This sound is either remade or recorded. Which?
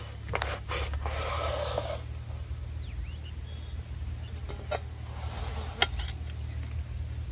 recorded